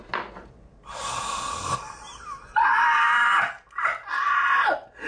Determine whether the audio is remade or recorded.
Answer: recorded